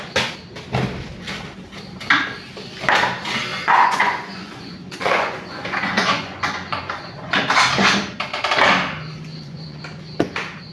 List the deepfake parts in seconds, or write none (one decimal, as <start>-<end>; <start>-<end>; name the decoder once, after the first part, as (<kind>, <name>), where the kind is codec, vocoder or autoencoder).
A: 3.5-7.4 (vocoder, Vocos); 9.3-9.8